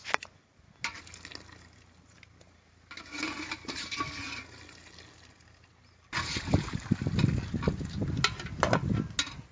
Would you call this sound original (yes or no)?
yes